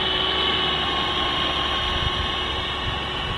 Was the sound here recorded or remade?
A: recorded